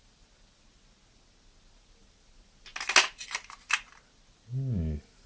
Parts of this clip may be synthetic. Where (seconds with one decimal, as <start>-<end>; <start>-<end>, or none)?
none